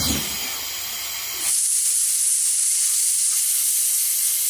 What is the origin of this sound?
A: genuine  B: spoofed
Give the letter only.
A